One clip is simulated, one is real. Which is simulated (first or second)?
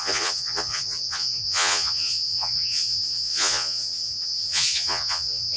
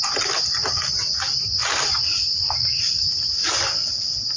first